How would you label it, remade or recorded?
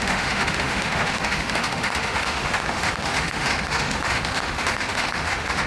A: remade